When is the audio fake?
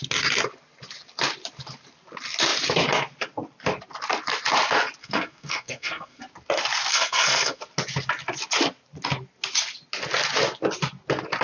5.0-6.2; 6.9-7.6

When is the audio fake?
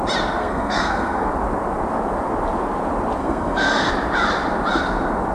0.4-1.3; 3.2-3.9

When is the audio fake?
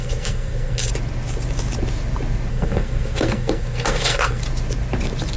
0.0-0.9; 2.5-4.4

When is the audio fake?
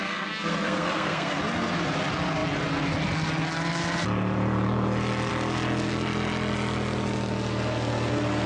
0.0-1.4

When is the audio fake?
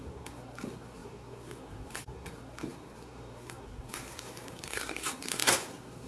0.0-6.1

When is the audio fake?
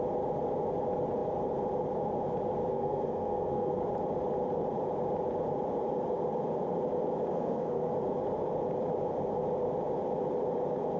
2.7-3.8; 7.3-7.9